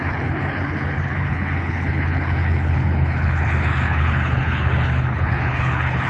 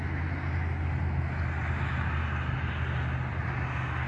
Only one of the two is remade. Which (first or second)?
first